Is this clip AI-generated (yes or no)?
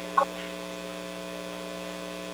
no